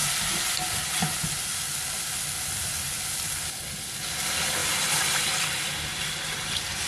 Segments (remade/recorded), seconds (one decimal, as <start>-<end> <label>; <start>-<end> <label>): 0.0-6.9 recorded